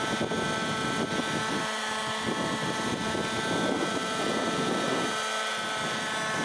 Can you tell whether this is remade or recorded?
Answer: recorded